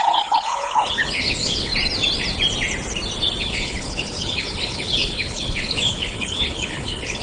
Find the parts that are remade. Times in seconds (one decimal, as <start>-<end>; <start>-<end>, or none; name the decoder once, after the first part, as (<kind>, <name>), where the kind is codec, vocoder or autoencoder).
0.0-1.7 (codec, HILCodec); 3.4-7.2